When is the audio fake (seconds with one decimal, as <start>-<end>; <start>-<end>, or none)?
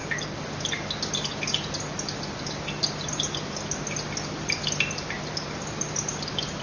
none